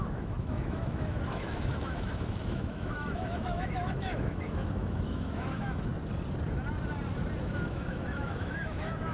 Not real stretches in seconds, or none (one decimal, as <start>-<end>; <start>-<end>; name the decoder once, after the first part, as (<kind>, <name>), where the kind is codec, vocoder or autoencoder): 0.0-5.9 (autoencoder, DAC-VAE); 7.4-9.1

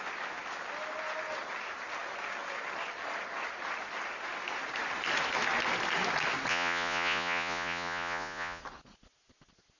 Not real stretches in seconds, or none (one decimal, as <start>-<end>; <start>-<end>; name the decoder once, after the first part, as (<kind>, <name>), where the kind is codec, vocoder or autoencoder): 6.5-8.6 (vocoder, Vocos)

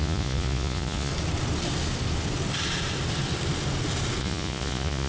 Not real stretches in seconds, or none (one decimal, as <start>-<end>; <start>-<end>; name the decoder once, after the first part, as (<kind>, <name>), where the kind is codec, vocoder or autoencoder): 0.0-1.1 (vocoder, Vocos); 4.2-5.1

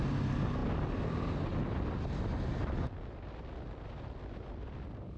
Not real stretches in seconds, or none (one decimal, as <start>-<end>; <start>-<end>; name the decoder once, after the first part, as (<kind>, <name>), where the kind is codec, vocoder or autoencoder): none